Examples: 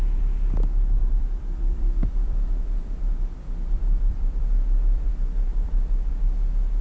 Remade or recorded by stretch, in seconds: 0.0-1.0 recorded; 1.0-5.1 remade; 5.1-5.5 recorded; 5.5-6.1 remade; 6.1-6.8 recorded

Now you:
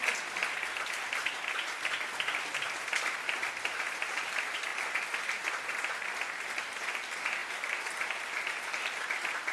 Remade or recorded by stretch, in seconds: 0.0-9.5 recorded

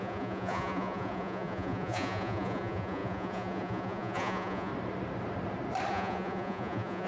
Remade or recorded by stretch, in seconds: 0.0-4.7 remade; 4.7-5.9 recorded; 5.9-7.1 remade

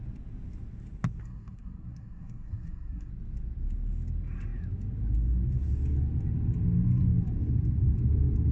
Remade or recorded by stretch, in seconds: 0.0-1.2 recorded; 1.2-3.1 remade; 3.1-8.5 recorded